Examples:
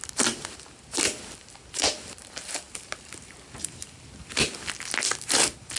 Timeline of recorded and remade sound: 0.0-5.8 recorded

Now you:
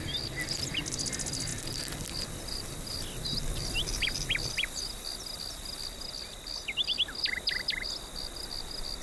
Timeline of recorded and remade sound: 0.0-9.0 recorded

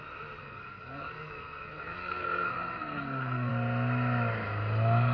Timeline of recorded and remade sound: 0.0-0.4 recorded; 0.4-3.5 remade; 3.5-5.1 recorded

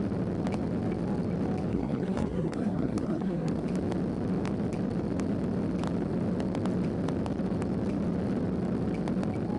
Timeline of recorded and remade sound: 0.0-1.7 recorded; 1.7-3.5 remade; 3.5-9.6 recorded